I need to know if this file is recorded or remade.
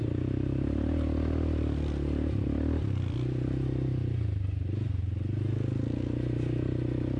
recorded